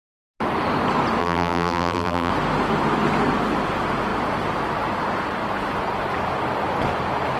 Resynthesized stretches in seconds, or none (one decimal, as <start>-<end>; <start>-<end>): 1.2-2.3